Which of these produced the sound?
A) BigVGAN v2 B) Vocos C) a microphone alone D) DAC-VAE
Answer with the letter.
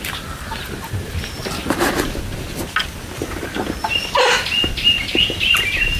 C